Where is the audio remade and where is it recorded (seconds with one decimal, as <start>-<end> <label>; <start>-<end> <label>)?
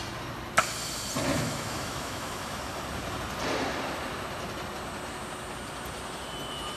0.0-1.3 recorded; 1.3-2.6 remade; 2.6-6.8 recorded